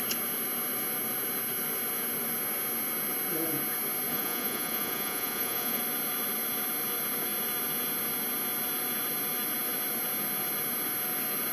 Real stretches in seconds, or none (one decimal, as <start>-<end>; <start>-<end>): 0.0-4.1; 5.8-11.5